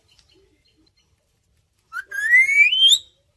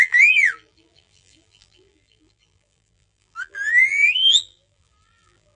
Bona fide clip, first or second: first